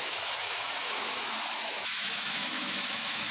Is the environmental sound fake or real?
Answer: fake